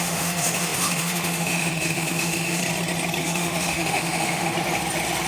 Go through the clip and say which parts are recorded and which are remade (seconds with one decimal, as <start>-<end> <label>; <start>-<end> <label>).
0.0-2.6 remade; 2.6-3.2 recorded; 3.2-4.5 remade; 4.5-5.3 recorded